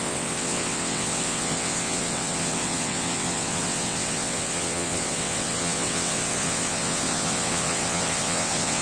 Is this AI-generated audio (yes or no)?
yes